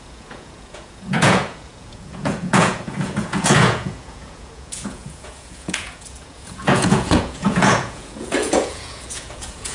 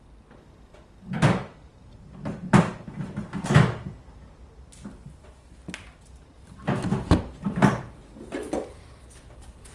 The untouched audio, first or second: second